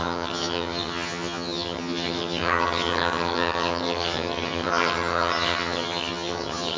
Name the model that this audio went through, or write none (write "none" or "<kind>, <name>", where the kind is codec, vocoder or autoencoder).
vocoder, HiFi-GAN